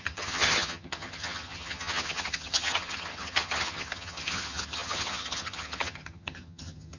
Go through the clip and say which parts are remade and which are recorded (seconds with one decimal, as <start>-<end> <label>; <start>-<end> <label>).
0.0-7.0 remade